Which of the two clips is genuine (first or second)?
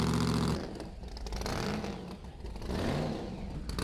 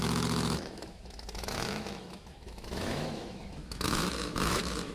first